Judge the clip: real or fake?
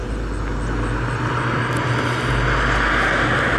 real